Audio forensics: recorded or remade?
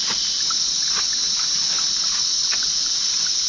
recorded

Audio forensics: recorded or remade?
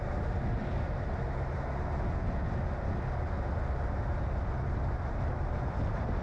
recorded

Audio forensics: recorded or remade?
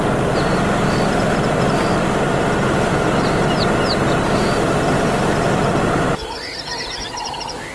recorded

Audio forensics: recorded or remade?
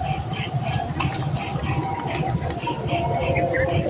recorded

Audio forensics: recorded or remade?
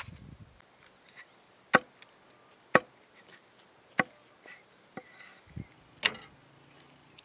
recorded